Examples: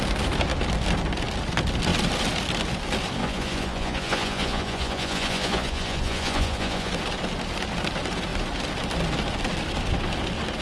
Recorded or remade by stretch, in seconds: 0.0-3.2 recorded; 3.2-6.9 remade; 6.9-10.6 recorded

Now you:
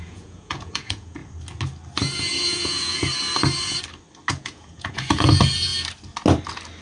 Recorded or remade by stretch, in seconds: 0.0-1.2 remade; 1.2-2.0 recorded; 2.0-3.0 remade; 3.0-4.3 recorded; 4.3-5.7 remade; 5.7-6.8 recorded

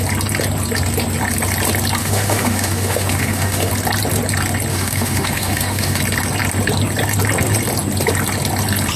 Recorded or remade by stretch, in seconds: 0.0-2.0 recorded; 2.0-3.7 remade; 3.7-4.7 recorded; 4.7-6.0 remade; 6.0-9.0 recorded

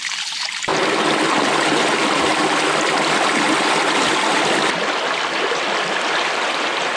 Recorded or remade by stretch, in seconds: 0.0-0.7 remade; 0.7-1.8 recorded; 1.8-2.3 remade; 2.3-6.5 recorded; 6.5-7.0 remade

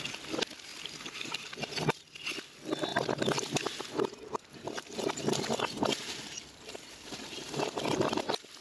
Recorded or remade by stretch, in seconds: 0.0-0.7 recorded; 0.7-1.5 remade; 1.5-2.9 recorded; 2.9-7.8 remade; 7.8-8.6 recorded

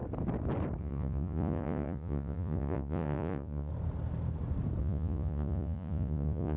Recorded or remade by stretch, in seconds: 0.0-0.8 recorded; 0.8-3.7 remade; 3.7-4.8 recorded; 4.8-6.6 remade

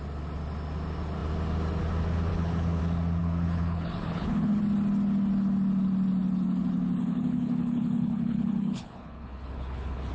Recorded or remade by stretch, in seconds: 0.0-2.3 recorded; 2.3-2.8 remade; 2.8-3.2 recorded; 3.2-4.6 remade; 4.6-7.0 recorded; 7.0-10.1 remade